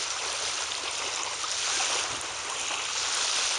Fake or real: real